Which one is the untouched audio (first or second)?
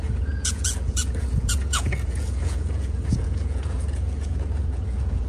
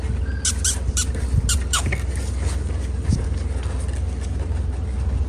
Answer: second